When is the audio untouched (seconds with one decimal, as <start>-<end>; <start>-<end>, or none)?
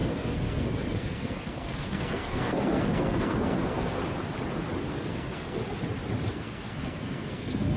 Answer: 4.0-4.9; 5.6-6.3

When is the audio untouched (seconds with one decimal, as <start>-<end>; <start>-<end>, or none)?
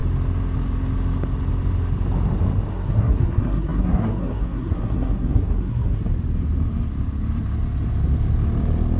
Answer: 0.0-2.7; 6.0-9.0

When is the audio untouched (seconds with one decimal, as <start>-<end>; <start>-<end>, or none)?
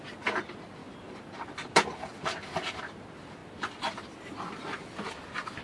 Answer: 0.0-5.6